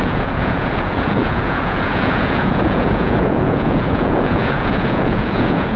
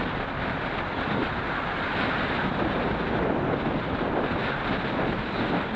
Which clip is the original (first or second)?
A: second